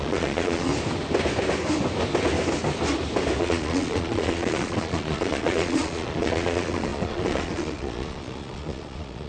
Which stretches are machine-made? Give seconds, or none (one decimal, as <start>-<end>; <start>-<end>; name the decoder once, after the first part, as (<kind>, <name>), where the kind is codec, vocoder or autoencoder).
0.0-0.7 (vocoder, Vocos); 3.4-9.3

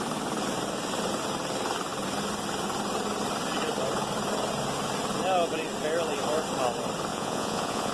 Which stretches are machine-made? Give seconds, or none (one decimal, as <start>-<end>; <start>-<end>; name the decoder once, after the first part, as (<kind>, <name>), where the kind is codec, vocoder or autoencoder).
7.1-7.9 (vocoder, Vocos)